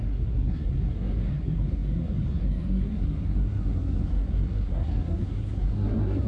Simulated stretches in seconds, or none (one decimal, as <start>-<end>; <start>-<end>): 0.0-6.3